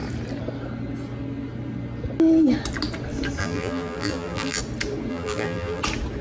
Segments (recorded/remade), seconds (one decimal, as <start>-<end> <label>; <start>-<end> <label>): 0.0-3.4 recorded; 3.4-4.6 remade; 4.6-5.1 recorded; 5.1-5.8 remade; 5.8-6.2 recorded